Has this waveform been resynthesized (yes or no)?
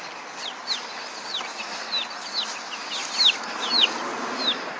no